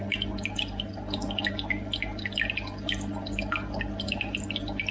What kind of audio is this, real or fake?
real